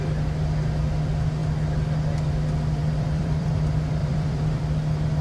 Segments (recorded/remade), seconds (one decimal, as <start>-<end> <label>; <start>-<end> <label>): 0.0-2.8 recorded; 2.8-3.5 remade; 3.5-4.0 recorded; 4.0-4.6 remade; 4.6-5.2 recorded